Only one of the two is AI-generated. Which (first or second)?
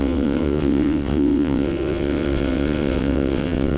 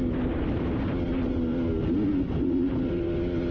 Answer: first